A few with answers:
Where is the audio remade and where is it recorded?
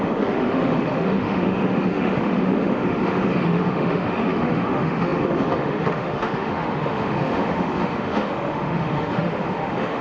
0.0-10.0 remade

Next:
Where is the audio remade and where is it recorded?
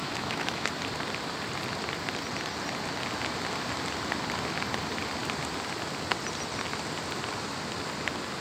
0.0-0.7 remade; 0.7-8.4 recorded